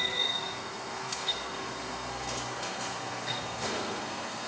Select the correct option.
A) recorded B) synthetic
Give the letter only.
B